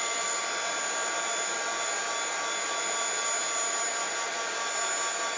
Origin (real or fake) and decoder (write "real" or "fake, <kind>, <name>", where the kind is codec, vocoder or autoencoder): real